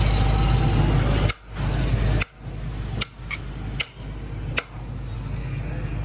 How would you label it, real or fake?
real